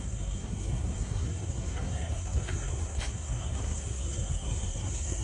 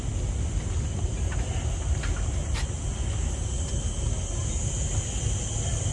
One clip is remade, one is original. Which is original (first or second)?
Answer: second